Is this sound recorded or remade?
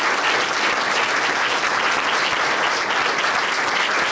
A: recorded